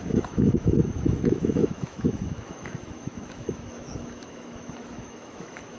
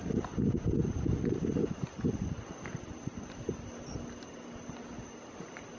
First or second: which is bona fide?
second